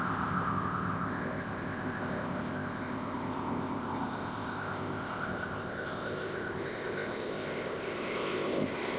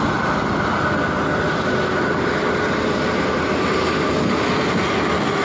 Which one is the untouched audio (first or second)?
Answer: second